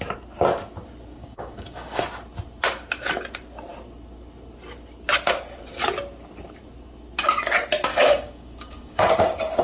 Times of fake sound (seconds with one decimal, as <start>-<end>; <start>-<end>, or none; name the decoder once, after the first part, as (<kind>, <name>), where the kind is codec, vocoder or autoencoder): 1.1-2.0 (codec, DAC); 7.9-9.0